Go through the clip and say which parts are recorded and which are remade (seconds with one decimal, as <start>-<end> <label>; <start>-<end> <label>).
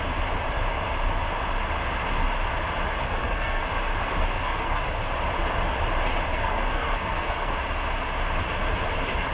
0.0-3.0 recorded; 3.0-3.6 remade; 3.6-4.0 recorded; 4.0-4.8 remade; 4.8-6.3 recorded; 6.3-7.5 remade; 7.5-9.3 recorded